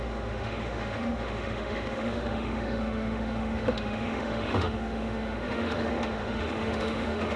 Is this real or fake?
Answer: fake